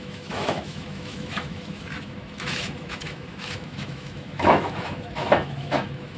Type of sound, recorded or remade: remade